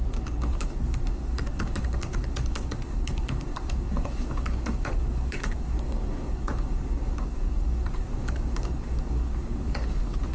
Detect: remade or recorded remade